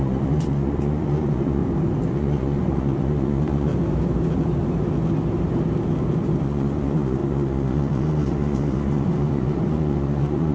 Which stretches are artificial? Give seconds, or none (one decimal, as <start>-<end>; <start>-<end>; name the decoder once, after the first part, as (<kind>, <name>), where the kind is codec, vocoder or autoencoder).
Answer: 0.0-1.6 (vocoder, Vocos); 2.1-3.7; 6.4-10.5

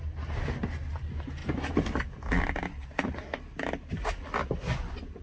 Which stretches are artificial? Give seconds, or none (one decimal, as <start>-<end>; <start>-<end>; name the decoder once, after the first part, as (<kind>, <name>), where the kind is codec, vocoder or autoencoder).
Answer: none

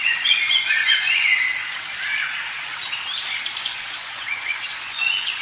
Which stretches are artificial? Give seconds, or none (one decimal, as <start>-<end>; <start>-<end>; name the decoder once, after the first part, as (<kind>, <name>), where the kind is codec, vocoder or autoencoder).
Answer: 0.0-1.3 (vocoder, Vocos); 3.6-5.4

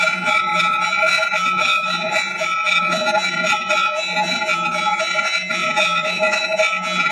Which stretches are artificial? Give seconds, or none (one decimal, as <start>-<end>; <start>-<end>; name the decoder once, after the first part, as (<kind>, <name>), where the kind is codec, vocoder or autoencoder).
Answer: 0.0-7.1 (vocoder, Vocos)

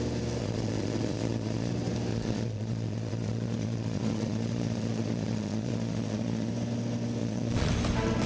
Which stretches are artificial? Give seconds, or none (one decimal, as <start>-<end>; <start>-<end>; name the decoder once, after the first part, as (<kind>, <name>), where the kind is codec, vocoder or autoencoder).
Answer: 0.4-1.7 (vocoder, Vocos); 2.1-6.5; 7.2-7.7